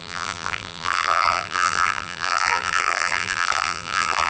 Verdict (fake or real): fake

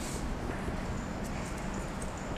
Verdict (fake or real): real